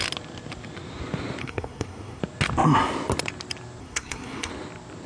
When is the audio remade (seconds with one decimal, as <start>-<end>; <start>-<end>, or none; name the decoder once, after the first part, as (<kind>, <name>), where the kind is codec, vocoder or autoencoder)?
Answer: 1.4-2.2 (codec, SNAC); 3.8-4.5